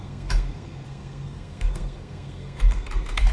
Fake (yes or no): yes